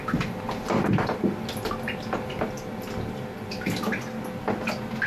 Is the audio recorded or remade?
recorded